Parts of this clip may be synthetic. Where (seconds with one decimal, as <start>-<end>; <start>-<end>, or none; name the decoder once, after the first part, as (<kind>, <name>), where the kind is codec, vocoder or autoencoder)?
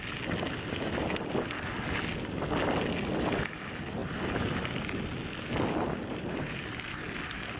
none